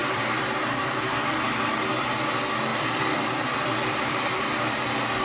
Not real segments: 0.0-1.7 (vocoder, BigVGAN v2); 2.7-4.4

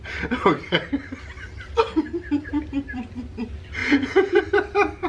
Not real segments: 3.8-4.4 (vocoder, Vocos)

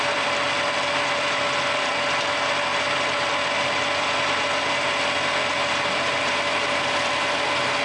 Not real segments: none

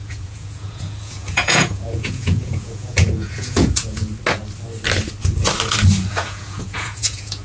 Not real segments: 0.0-4.0 (vocoder, Vocos); 6.1-7.4

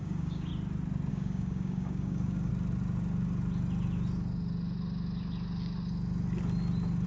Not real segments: 0.0-0.5 (codec, DAC); 1.1-2.5

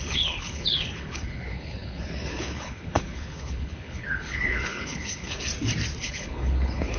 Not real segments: 0.0-5.5 (codec, HILCodec); 6.0-7.0

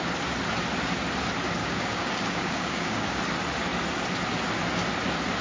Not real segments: 1.6-3.2 (codec, DAC)